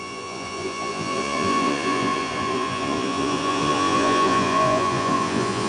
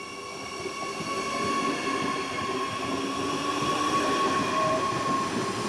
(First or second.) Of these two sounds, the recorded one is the second